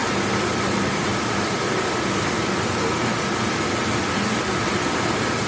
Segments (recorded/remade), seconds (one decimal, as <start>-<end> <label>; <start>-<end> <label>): 0.0-0.6 recorded; 0.6-1.1 remade; 1.1-4.4 recorded; 4.4-5.5 remade